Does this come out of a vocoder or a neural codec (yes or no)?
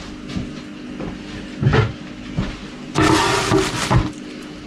no